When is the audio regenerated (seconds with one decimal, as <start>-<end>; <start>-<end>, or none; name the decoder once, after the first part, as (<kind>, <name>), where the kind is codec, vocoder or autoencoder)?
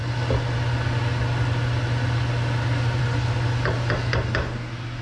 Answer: none